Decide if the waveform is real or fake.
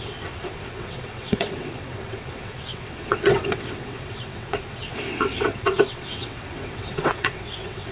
fake